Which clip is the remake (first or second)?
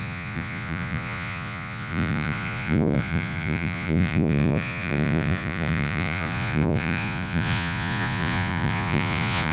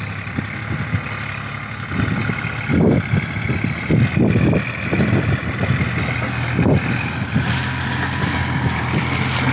first